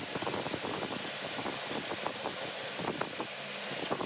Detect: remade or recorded recorded